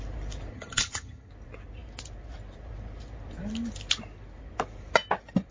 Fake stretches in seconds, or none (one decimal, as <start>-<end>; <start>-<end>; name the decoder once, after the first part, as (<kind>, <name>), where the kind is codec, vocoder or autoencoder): 0.5-1.3 (vocoder, HiFi-GAN)